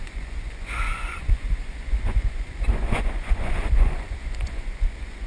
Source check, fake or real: fake